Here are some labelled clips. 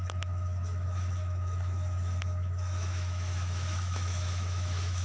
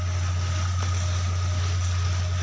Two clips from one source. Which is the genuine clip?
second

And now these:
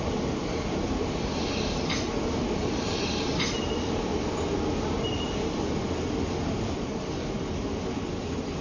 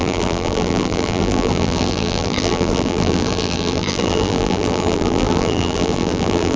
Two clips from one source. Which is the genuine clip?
first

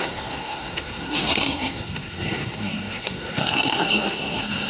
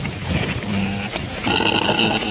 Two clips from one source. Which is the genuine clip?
second